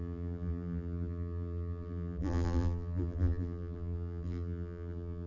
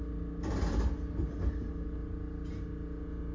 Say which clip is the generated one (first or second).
first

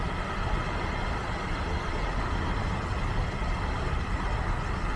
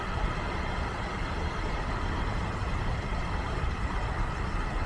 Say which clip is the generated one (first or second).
second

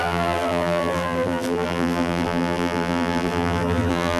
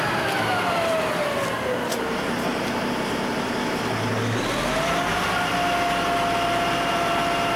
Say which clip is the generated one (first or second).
first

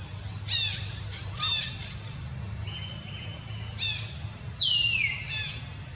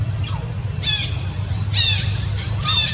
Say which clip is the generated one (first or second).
second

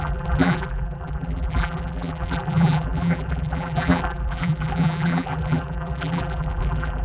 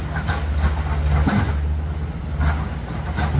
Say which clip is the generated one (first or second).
first